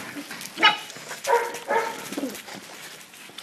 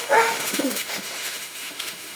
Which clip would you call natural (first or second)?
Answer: first